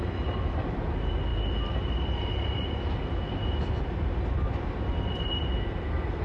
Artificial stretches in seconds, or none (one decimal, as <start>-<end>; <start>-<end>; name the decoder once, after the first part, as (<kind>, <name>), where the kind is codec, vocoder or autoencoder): none

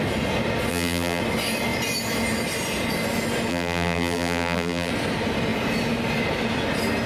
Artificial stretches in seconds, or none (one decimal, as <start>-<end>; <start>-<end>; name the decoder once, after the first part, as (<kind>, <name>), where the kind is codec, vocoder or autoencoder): 0.7-1.2 (vocoder, BigVGAN v2); 3.5-4.9

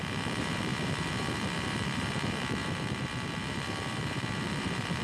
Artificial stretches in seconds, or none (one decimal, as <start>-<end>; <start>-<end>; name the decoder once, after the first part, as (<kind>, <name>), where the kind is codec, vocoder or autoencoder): 0.0-5.0 (vocoder, BigVGAN v2)

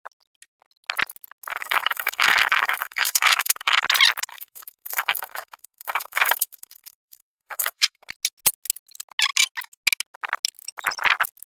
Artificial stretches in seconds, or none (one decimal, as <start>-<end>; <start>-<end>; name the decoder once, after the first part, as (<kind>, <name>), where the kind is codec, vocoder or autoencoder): 1.5-3.8 (codec, SNAC); 4.3-8.1

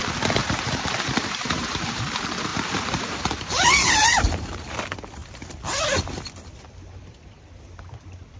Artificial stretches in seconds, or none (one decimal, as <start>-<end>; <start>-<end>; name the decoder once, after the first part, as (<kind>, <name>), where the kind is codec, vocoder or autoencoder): 0.4-2.0 (vocoder, BigVGAN v2); 2.5-4.8

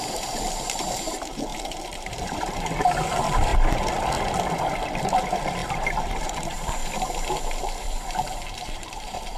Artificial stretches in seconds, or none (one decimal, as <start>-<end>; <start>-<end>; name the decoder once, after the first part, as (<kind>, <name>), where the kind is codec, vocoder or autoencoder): 0.0-3.5 (vocoder, BigVGAN v2); 5.0-6.8; 7.6-9.4

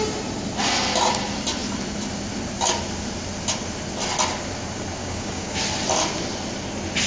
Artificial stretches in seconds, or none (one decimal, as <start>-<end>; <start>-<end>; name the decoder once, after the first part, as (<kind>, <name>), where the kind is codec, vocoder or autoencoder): 5.0-5.6 (codec, DAC)